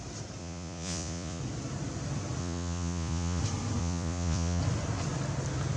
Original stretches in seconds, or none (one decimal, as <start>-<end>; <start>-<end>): 0.0-0.4; 1.4-2.4; 3.4-3.8; 4.6-5.8